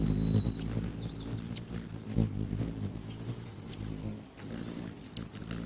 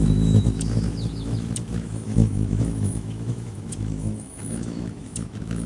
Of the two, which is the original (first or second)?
first